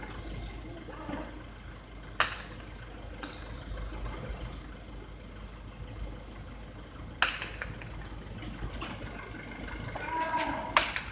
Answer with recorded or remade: recorded